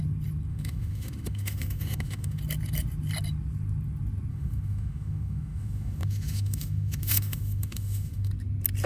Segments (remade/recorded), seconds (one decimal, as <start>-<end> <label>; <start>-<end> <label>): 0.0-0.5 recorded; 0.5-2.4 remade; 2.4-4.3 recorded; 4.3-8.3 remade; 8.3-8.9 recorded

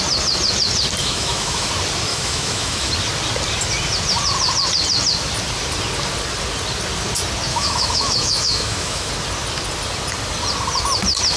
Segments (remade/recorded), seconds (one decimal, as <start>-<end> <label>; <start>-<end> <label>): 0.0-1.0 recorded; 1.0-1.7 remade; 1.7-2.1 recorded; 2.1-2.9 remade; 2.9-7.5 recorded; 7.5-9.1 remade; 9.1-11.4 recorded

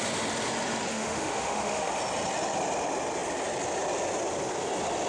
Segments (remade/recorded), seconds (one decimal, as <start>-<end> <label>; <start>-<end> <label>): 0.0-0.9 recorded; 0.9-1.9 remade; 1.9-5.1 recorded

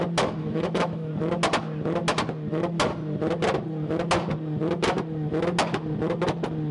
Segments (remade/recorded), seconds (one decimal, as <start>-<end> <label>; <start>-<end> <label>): 0.0-0.4 recorded; 0.4-1.1 remade; 1.1-6.7 recorded